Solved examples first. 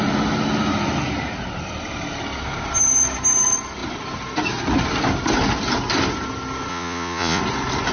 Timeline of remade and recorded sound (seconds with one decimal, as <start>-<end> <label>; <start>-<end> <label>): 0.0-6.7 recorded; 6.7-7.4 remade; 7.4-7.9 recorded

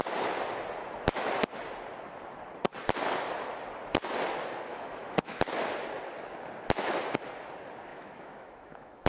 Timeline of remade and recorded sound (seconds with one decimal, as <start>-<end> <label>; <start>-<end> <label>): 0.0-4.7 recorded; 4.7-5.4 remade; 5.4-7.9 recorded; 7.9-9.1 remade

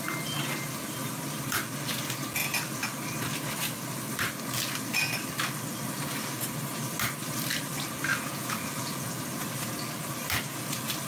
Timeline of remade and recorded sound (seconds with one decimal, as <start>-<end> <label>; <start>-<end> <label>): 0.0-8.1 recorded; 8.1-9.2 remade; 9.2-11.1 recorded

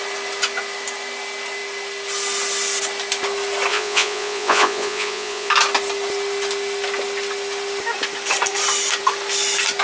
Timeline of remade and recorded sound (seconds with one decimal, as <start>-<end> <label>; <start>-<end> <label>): 0.0-3.7 recorded; 3.7-5.5 remade; 5.5-9.8 recorded

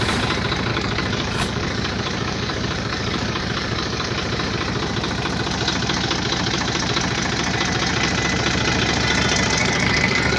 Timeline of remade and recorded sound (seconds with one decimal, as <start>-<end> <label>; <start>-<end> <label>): 0.0-0.7 recorded; 0.7-4.1 remade; 4.1-9.6 recorded; 9.6-10.4 remade

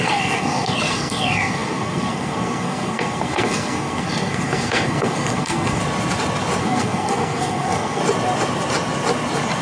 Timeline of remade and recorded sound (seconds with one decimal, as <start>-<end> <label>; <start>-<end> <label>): 0.0-5.8 remade; 5.8-6.6 recorded; 6.6-8.0 remade; 8.0-9.6 recorded